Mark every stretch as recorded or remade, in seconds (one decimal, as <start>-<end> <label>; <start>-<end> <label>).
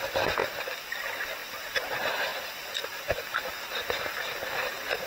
0.0-1.4 recorded; 1.4-1.9 remade; 1.9-2.3 recorded; 2.3-3.5 remade; 3.5-5.1 recorded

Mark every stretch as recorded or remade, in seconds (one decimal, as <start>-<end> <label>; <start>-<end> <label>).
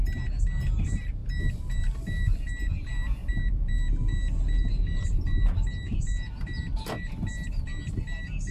0.0-8.5 recorded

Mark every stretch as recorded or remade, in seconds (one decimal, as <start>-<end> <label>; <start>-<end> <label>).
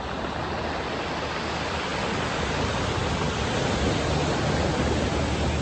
0.0-5.6 recorded